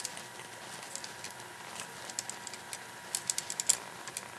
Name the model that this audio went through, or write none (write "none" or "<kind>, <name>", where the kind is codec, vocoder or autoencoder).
none